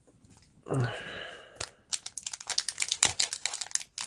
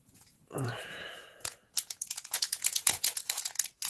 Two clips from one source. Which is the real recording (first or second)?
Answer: first